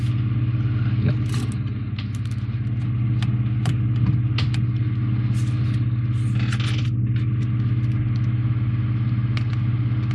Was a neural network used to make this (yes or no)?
no